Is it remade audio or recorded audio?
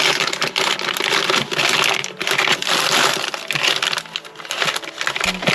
recorded